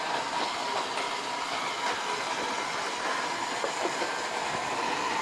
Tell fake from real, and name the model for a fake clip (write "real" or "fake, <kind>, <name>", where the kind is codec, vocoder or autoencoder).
real